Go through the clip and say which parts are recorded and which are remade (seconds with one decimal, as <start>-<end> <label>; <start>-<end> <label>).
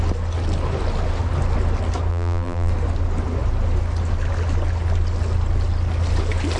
0.0-2.1 recorded; 2.1-2.7 remade; 2.7-6.6 recorded